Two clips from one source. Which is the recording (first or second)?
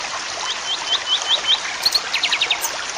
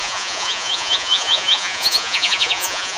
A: first